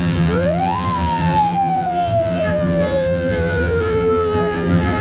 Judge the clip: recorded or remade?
remade